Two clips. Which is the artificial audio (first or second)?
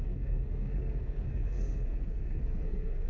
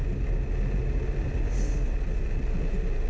first